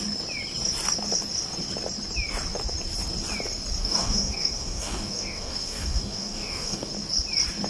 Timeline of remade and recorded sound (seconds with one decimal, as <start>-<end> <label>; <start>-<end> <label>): 0.0-3.8 recorded; 3.8-6.9 remade; 6.9-7.7 recorded